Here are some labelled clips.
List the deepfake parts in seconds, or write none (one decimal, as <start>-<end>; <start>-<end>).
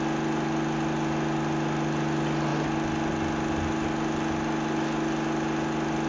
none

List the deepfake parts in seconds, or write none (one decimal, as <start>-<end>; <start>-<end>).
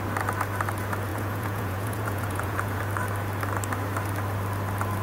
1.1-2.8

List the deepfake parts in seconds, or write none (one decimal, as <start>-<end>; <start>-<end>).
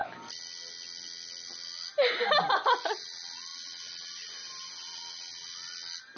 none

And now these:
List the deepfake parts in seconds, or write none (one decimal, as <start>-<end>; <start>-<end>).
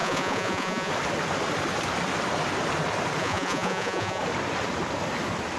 0.0-0.9; 3.2-4.2